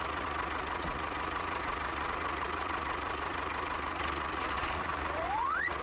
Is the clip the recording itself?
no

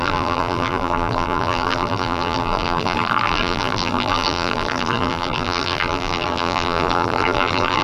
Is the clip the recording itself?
no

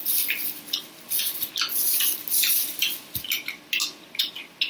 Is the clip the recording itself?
yes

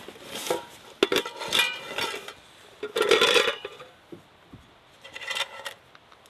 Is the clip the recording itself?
yes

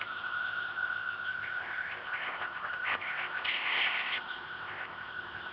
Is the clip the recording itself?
no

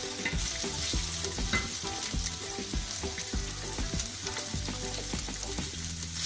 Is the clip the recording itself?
yes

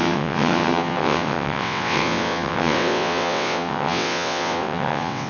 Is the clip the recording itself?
no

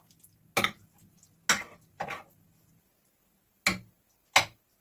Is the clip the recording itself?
yes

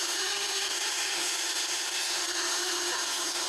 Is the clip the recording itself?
no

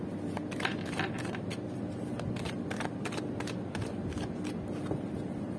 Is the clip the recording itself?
no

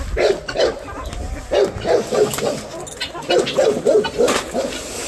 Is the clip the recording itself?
yes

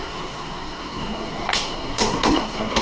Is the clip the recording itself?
no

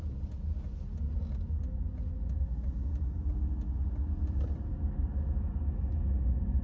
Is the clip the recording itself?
yes